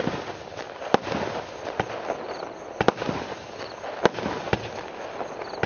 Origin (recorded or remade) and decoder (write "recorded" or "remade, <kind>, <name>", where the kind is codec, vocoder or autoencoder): recorded